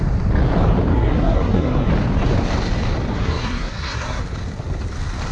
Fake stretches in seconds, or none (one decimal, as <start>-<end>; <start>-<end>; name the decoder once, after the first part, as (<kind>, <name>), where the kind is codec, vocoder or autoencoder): 0.9-1.9 (codec, SNAC); 3.1-4.2